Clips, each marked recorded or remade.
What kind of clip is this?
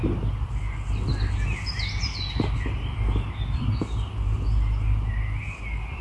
recorded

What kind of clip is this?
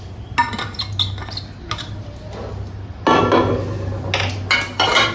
recorded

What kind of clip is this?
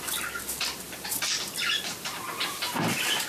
recorded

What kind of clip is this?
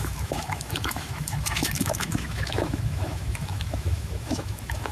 remade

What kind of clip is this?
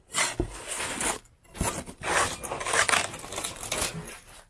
recorded